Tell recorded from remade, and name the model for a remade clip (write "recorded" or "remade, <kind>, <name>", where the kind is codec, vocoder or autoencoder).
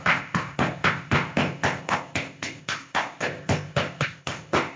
remade, codec, ZipCodec